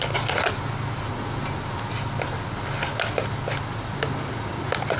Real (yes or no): yes